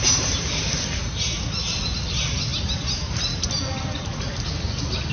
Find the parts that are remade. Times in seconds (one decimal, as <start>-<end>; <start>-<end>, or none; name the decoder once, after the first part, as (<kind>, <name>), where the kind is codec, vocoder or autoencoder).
0.0-0.6 (vocoder, BigVGAN v2); 2.5-3.5